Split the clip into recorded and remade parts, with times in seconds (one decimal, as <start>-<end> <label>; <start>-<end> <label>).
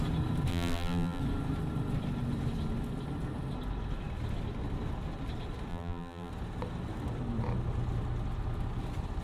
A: 0.0-0.5 recorded; 0.5-1.2 remade; 1.2-5.7 recorded; 5.7-6.3 remade; 6.3-9.2 recorded